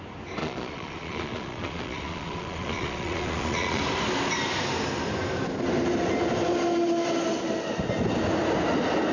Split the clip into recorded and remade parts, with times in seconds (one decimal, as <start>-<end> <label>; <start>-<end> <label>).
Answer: 0.0-0.4 recorded; 0.4-3.8 remade; 3.8-9.1 recorded